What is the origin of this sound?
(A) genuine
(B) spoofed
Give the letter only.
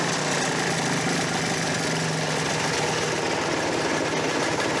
A